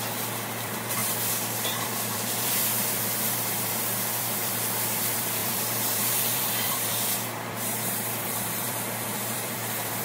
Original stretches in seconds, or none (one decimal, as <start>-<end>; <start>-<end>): none